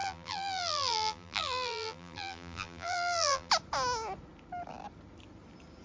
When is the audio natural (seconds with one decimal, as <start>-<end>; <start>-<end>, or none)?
3.5-5.8